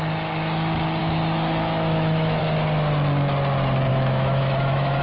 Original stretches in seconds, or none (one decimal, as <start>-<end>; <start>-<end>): 0.0-1.0; 2.4-3.9